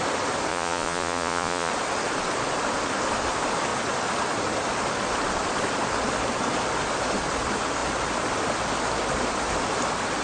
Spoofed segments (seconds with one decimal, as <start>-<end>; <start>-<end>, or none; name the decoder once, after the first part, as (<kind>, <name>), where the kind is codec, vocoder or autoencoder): 0.5-1.7 (vocoder, Vocos)